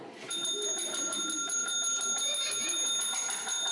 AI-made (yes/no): no